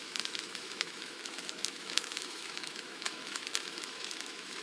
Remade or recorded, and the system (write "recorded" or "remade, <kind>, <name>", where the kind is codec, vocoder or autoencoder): remade, autoencoder, DAC-VAE